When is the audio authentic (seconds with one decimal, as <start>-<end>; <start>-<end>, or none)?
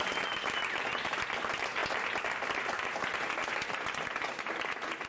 0.0-5.1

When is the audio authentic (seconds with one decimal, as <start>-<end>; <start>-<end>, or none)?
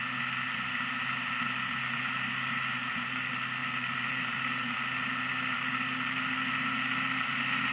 0.0-3.6; 4.4-7.7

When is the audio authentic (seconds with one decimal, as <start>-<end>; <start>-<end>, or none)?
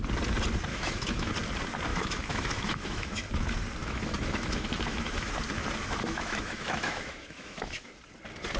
0.0-0.7; 1.3-1.9; 3.3-3.8; 5.3-5.8; 7.9-8.6